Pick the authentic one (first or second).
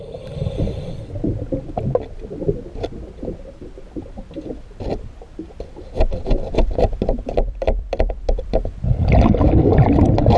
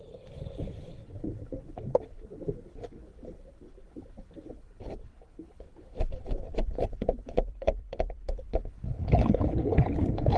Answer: first